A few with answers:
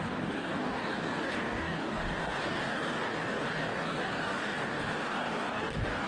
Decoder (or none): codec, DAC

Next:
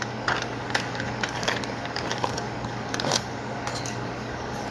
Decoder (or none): codec, DAC